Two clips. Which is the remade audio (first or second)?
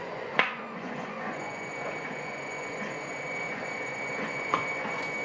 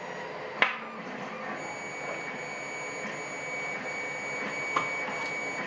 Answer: first